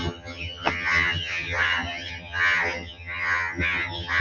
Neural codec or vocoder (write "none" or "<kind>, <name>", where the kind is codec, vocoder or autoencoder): vocoder, HiFi-GAN